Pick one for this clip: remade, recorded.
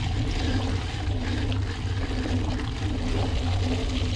recorded